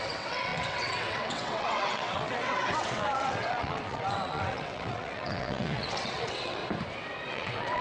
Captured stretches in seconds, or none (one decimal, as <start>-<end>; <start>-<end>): 6.6-7.3